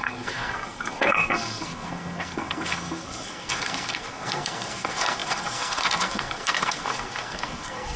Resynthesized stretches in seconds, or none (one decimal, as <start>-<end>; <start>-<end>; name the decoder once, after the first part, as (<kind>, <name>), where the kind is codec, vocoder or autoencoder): 0.0-8.0 (codec, SNAC)